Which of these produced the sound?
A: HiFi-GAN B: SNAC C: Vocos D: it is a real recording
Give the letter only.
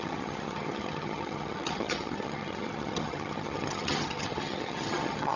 A